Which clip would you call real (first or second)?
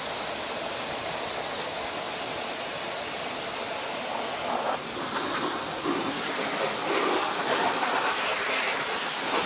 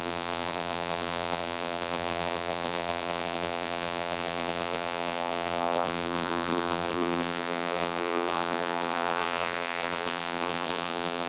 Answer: first